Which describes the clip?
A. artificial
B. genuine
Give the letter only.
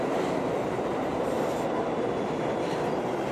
B